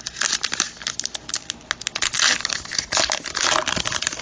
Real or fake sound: real